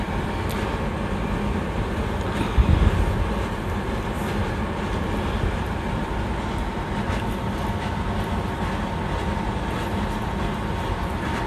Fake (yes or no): no